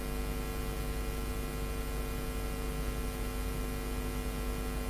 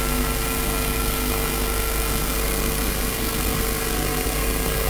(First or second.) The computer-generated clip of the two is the second